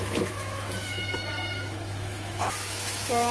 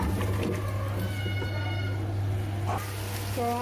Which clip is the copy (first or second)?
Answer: first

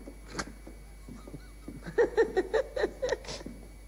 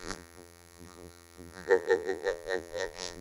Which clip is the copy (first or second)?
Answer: second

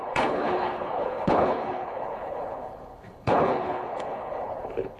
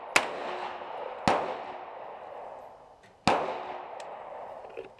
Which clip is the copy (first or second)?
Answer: first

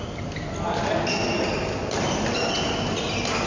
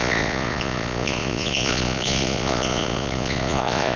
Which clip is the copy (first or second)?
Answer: second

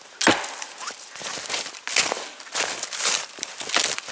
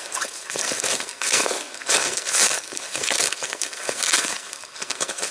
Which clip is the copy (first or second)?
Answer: second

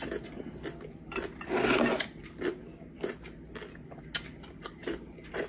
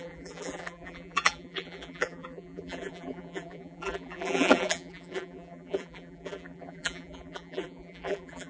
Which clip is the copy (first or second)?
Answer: second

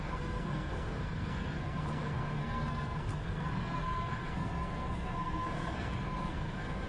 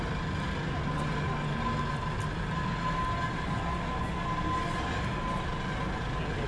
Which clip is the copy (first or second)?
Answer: first